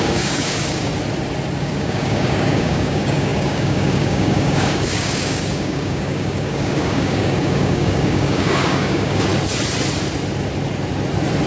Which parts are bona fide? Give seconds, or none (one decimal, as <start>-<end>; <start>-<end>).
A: 0.9-1.6; 9.3-11.5